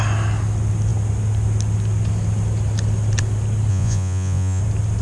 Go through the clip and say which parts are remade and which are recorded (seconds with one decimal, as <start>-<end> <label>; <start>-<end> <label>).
0.0-3.7 recorded; 3.7-4.6 remade; 4.6-5.0 recorded